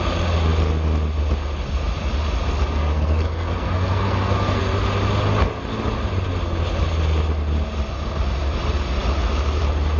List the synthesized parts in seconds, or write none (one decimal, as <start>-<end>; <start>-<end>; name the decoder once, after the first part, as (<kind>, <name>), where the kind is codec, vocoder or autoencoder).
2.8-4.6 (codec, SNAC)